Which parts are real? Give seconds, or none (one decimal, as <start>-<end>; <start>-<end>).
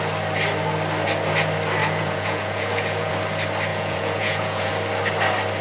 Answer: 0.0-1.8; 3.1-3.7; 4.7-5.6